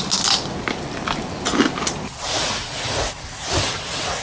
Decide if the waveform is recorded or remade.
recorded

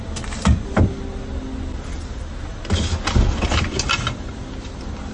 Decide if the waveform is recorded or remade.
recorded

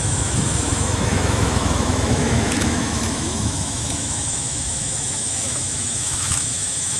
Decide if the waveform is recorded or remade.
remade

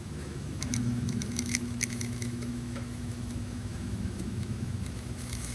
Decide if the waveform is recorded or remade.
remade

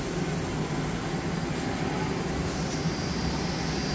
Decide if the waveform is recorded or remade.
recorded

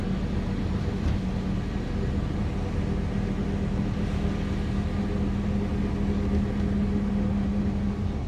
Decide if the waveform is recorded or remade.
recorded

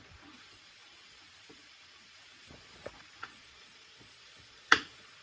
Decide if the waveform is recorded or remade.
remade